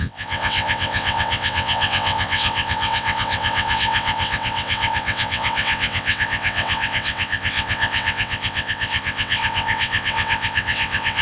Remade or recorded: remade